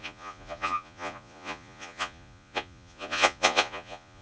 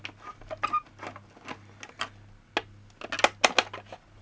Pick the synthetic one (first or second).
first